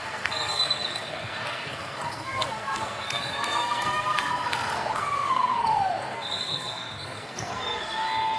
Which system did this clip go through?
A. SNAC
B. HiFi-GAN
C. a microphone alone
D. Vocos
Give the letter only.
A